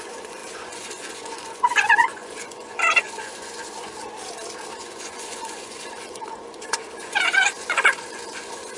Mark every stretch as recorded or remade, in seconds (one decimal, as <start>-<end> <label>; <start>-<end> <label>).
0.0-3.9 remade; 3.9-4.8 recorded; 4.8-8.8 remade